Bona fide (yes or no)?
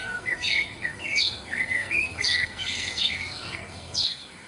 no